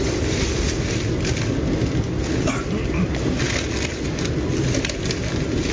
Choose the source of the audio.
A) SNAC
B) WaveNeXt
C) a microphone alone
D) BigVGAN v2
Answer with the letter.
C